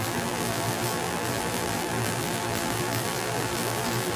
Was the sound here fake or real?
fake